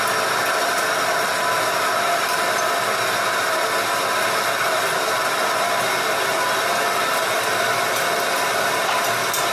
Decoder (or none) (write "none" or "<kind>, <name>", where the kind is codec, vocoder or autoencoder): none